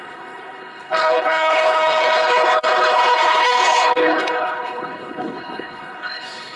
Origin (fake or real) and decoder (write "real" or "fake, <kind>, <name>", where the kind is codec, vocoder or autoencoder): fake, codec, HILCodec